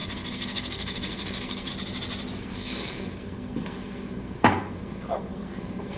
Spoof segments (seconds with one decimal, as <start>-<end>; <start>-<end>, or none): 0.0-1.7; 2.4-6.0